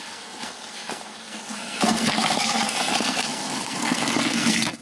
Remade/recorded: remade